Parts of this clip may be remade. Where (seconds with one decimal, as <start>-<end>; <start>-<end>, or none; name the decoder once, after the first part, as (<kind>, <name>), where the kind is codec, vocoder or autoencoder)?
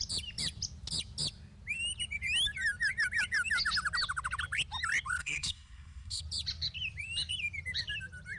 5.2-6.2 (codec, SNAC)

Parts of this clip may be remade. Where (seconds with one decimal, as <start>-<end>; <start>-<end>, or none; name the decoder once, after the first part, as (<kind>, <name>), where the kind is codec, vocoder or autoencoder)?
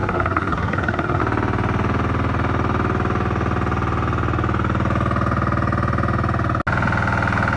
0.0-1.2 (codec, SNAC)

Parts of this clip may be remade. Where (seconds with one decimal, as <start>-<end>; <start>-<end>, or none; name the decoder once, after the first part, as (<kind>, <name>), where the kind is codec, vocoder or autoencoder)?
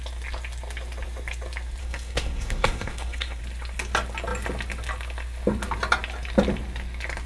1.8-3.4 (codec, SNAC)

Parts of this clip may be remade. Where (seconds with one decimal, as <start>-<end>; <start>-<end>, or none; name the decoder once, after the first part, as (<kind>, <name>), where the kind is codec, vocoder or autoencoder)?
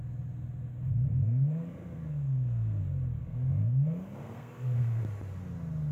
1.1-2.8 (codec, SNAC); 3.2-5.0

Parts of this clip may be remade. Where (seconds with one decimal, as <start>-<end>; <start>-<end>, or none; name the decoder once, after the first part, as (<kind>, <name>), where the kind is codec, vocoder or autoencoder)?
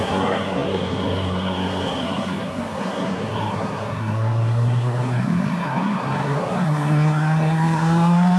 0.0-8.4 (codec, SNAC)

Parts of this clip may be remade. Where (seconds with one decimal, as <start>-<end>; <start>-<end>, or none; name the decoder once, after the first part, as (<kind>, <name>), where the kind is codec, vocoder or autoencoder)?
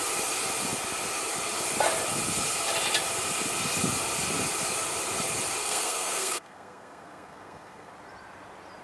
5.6-7.9 (codec, SNAC)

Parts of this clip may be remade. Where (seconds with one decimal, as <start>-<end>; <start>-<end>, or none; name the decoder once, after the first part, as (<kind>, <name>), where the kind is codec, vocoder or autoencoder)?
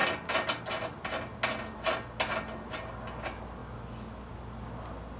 none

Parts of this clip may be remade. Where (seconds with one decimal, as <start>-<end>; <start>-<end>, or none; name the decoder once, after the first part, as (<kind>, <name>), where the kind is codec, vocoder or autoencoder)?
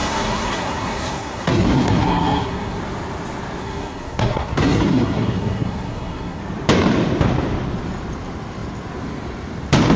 0.0-2.8 (codec, SNAC); 3.6-6.4